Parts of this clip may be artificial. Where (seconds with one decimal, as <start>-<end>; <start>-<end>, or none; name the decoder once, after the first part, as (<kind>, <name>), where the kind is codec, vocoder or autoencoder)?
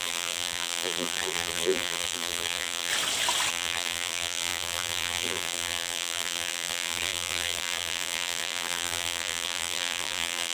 0.0-2.9 (vocoder, BigVGAN v2); 3.5-10.5